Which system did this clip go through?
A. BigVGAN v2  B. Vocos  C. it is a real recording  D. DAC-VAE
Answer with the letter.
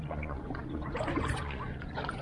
B